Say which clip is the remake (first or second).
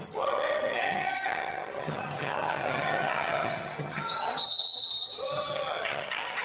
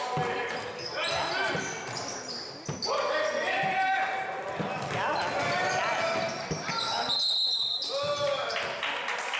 first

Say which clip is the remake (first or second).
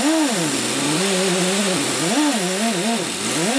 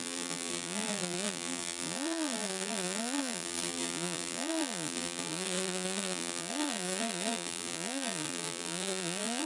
second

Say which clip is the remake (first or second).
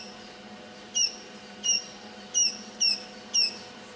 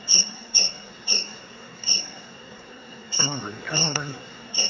second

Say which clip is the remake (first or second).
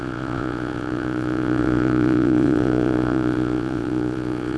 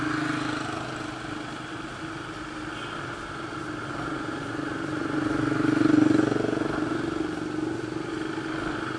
first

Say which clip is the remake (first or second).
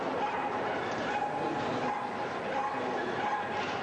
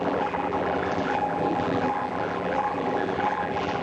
second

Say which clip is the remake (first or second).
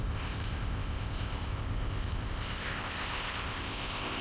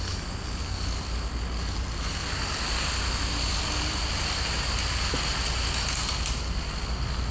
first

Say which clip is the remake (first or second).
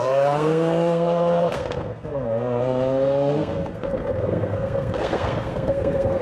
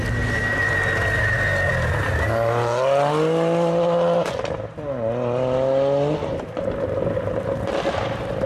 first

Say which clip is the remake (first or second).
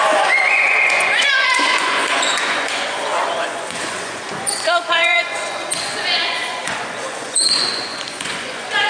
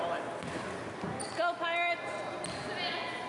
first